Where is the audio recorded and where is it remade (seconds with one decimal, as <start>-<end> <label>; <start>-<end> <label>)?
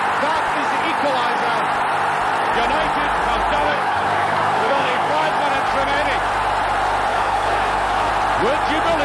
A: 0.0-3.6 recorded; 3.6-5.3 remade; 5.3-7.1 recorded; 7.1-8.1 remade; 8.1-9.0 recorded